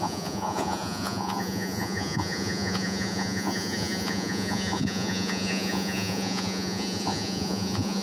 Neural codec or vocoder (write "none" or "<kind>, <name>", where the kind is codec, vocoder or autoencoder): vocoder, Vocos